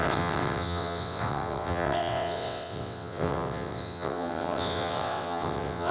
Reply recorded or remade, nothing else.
remade